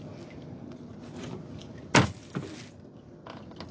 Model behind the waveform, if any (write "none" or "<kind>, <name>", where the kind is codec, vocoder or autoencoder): none